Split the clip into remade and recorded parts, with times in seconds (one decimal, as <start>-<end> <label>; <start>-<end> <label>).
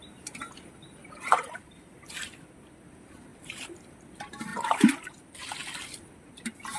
0.0-3.3 recorded; 3.3-3.9 remade; 3.9-6.8 recorded